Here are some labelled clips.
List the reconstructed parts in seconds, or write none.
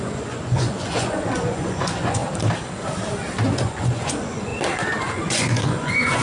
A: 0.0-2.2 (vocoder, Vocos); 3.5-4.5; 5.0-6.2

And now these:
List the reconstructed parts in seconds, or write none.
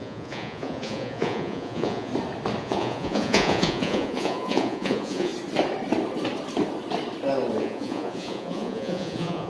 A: 0.0-2.1 (vocoder, Vocos); 2.6-5.3; 7.6-9.5